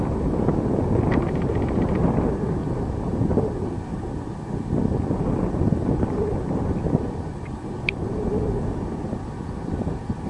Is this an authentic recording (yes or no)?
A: yes